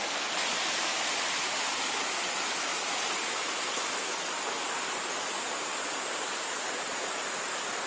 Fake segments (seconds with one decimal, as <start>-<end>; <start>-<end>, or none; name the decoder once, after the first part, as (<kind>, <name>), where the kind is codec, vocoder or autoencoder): 2.7-4.4 (vocoder, BigVGAN v2); 5.7-7.5